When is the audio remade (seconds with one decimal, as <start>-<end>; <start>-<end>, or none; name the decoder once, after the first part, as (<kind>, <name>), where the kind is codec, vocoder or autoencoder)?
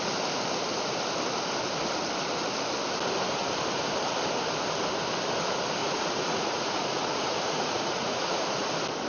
5.8-8.7 (vocoder, Vocos)